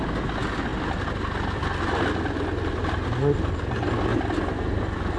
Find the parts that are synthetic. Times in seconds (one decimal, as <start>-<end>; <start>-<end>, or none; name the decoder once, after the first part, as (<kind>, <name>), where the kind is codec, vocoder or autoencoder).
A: none